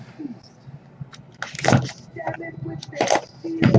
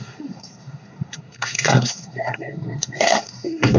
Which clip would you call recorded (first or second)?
first